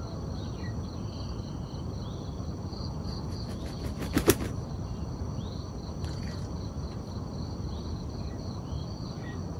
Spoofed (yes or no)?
no